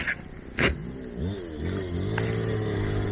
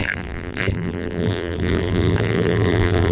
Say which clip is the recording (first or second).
first